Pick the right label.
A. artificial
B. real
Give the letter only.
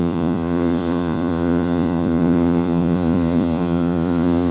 A